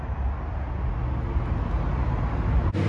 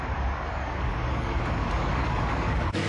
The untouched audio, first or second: first